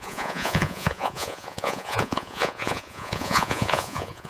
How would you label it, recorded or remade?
remade